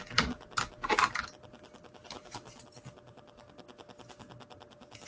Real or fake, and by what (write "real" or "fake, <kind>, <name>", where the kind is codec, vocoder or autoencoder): real